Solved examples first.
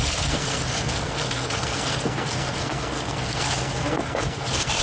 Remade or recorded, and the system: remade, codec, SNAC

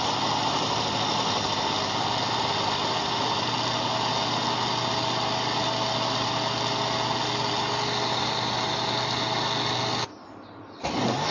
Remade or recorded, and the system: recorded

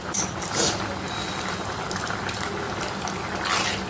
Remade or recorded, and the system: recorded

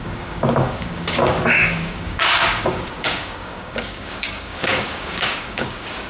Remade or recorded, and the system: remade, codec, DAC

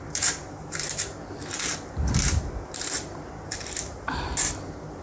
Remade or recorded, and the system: remade, vocoder, BigVGAN v2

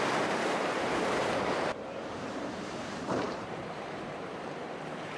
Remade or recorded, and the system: remade, vocoder, BigVGAN v2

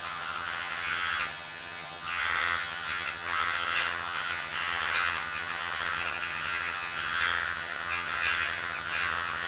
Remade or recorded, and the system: remade, vocoder, HiFi-GAN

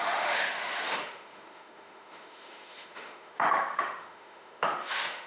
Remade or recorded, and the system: remade, autoencoder, DAC-VAE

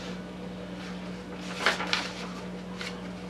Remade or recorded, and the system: recorded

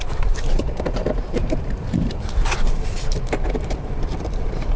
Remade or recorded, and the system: remade, vocoder, BigVGAN v2